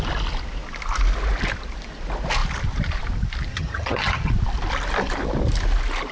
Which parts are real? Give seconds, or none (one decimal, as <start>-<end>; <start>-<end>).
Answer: 0.0-3.5; 4.3-6.1